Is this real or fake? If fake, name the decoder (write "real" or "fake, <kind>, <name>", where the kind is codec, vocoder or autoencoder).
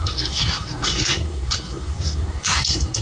fake, codec, SNAC